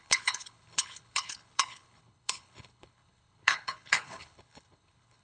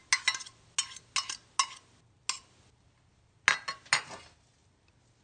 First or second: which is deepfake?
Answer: first